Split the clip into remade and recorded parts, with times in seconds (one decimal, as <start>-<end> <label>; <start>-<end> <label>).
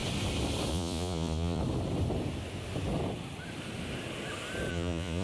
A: 0.0-0.7 recorded; 0.7-1.6 remade; 1.6-4.7 recorded; 4.7-5.2 remade